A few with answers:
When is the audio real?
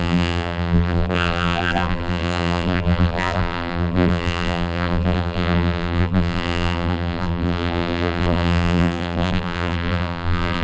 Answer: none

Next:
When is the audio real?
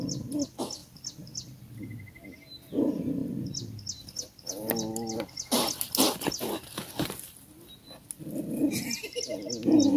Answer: 0.0-0.8; 1.8-10.0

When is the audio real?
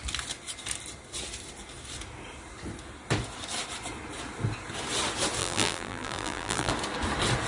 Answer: 0.0-5.4; 6.7-7.5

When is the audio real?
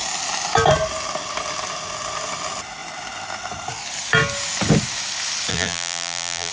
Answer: 0.0-5.5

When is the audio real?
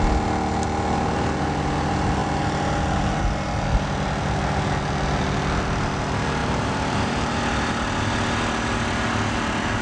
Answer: 0.0-6.4; 7.4-9.8